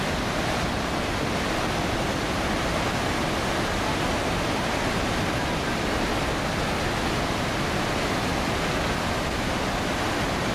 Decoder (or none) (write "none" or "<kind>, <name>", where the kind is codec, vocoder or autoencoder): none